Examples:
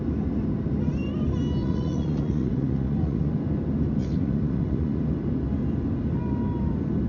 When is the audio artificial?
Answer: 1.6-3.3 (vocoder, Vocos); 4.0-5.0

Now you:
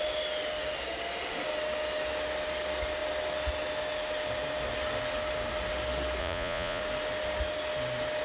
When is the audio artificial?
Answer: 6.2-6.8 (vocoder, Vocos)

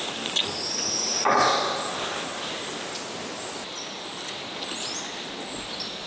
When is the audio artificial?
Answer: none

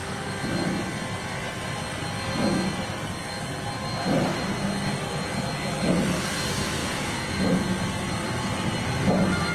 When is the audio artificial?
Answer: 6.8-7.4 (vocoder, Vocos)

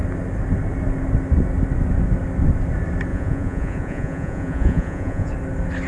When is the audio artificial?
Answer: 3.1-5.3 (vocoder, Vocos)